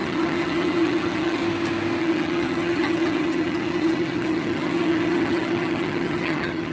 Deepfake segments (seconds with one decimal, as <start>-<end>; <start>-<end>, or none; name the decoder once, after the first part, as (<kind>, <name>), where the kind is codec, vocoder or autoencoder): 0.0-1.4 (vocoder, HiFi-GAN); 2.0-6.7